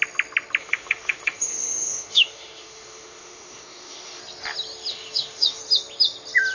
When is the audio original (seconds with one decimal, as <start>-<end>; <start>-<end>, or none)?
0.0-0.6; 4.2-4.9; 5.6-6.5